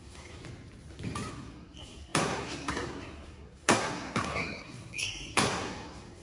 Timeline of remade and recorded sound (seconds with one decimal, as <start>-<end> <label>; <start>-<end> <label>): 0.0-0.4 remade; 0.4-1.3 recorded; 1.3-6.2 remade